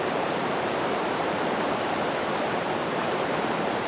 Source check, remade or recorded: remade